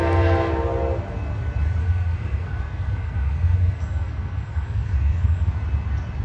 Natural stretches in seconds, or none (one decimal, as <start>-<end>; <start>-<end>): 0.0-1.8; 5.5-6.2